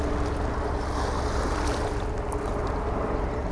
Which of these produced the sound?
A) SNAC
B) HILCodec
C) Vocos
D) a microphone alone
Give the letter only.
D